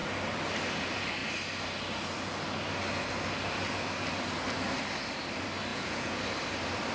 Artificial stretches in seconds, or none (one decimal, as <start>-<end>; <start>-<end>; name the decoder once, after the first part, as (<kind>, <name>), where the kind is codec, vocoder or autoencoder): 5.7-6.2 (vocoder, Vocos)